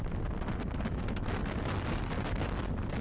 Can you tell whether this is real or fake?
real